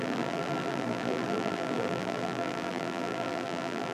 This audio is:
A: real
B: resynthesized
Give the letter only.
B